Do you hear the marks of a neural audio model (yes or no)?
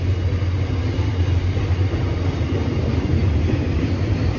no